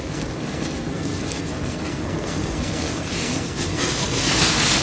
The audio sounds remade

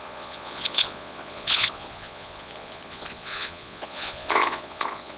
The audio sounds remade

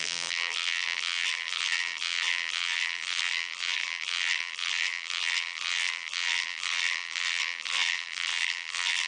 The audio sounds remade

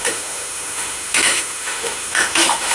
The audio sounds remade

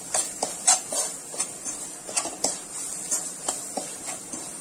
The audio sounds recorded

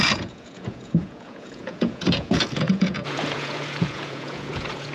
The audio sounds remade